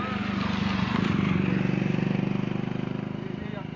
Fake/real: real